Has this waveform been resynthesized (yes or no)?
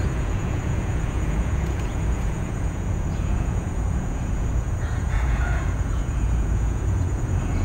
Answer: yes